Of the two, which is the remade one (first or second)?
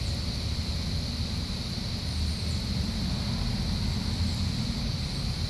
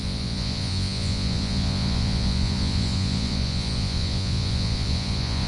second